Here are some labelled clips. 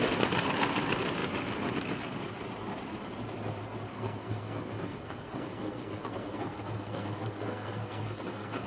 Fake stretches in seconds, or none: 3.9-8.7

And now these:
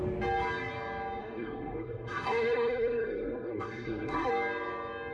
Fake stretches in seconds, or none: 1.2-4.3

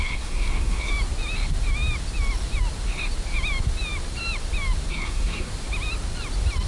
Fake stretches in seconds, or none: 0.0-0.9; 4.9-5.5

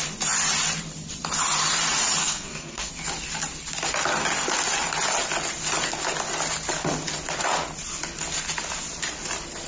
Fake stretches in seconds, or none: 2.2-2.9